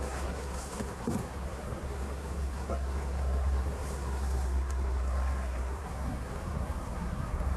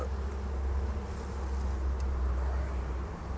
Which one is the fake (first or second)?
first